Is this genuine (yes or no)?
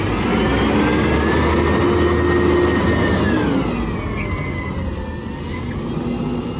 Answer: yes